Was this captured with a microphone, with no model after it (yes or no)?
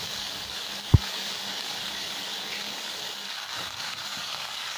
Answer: no